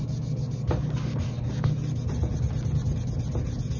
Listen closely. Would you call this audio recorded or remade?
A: recorded